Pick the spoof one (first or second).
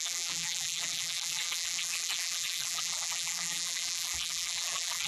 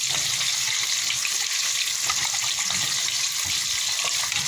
first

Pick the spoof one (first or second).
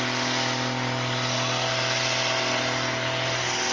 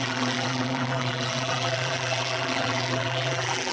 second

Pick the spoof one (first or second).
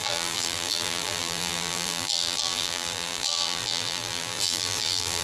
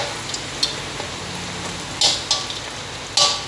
first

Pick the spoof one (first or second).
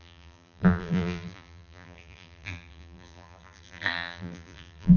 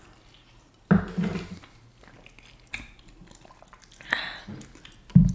first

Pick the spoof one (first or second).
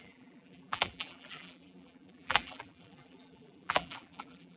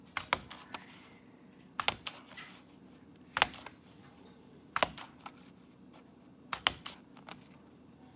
first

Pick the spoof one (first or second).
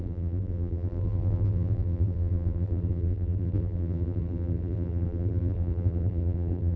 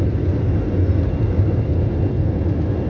first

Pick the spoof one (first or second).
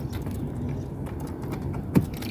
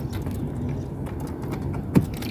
first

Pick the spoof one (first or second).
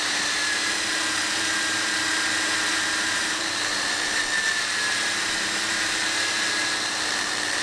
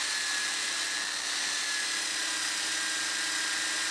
first